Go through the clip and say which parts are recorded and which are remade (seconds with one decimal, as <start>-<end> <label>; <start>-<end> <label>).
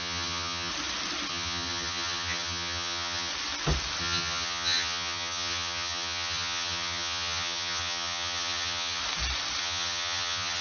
0.0-0.7 remade; 0.7-1.3 recorded; 1.3-3.3 remade; 3.3-4.0 recorded; 4.0-9.0 remade; 9.0-9.6 recorded; 9.6-10.6 remade